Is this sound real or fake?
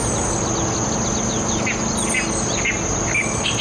real